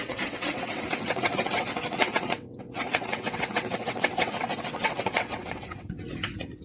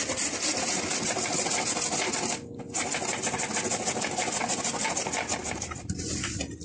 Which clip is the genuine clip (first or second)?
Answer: second